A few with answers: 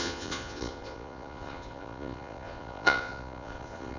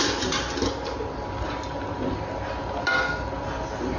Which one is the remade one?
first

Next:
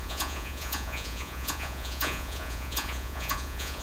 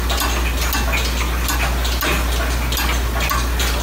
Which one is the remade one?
first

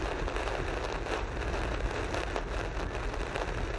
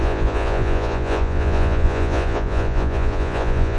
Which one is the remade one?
second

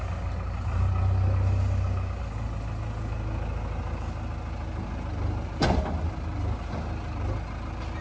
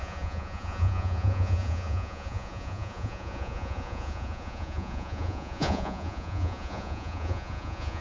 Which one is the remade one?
second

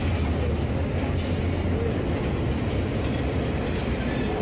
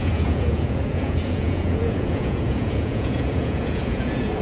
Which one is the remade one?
second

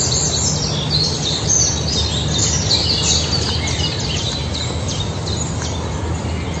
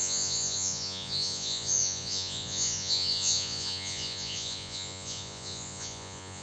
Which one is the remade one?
second